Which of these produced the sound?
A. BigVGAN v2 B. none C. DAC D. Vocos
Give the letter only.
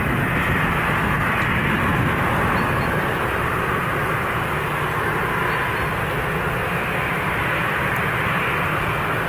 B